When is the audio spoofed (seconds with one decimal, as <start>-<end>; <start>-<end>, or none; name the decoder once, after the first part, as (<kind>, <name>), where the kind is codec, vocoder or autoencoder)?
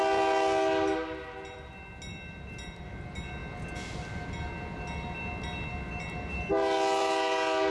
none